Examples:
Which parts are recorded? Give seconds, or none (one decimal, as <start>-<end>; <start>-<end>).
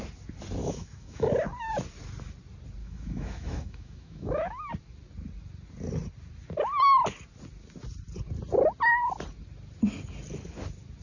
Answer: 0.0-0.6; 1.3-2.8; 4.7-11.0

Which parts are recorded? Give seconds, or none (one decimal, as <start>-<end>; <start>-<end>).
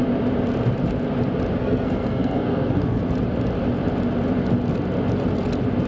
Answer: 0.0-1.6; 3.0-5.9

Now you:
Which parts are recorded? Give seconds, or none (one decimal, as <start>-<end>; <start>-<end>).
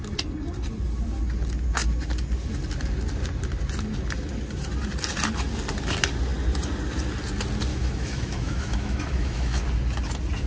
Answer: 0.0-7.7; 9.6-10.5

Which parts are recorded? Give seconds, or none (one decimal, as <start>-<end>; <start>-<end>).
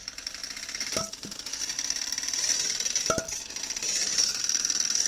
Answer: 0.0-5.1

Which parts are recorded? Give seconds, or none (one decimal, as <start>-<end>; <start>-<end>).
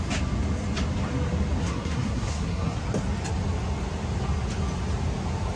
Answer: 0.0-1.6; 2.8-5.6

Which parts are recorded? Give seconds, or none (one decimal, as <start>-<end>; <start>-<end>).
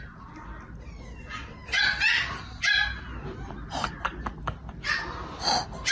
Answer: 0.0-5.9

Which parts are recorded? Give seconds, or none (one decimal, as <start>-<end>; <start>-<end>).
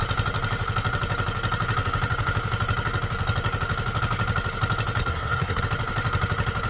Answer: 0.0-5.0; 5.6-6.7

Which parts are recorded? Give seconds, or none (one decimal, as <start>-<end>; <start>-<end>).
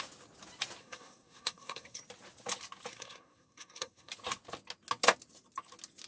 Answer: 0.0-0.8; 2.0-2.9; 4.1-6.1